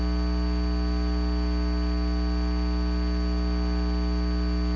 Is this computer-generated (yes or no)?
no